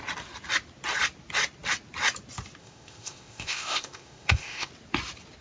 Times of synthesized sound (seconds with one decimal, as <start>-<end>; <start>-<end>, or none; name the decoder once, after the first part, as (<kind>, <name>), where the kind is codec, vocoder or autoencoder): 2.6-4.7 (codec, ZipCodec)